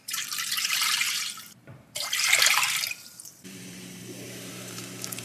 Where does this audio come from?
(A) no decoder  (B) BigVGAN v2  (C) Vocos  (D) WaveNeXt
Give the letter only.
B